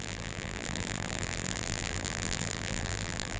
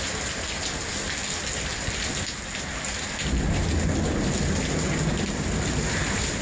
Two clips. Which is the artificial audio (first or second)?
first